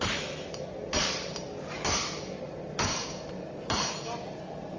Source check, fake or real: real